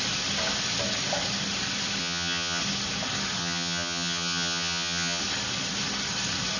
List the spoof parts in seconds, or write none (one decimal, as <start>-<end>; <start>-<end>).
2.0-2.6; 3.4-5.2